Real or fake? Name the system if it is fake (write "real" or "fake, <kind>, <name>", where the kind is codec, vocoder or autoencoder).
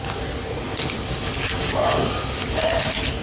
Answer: real